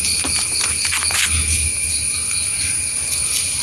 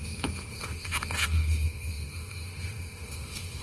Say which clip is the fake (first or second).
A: second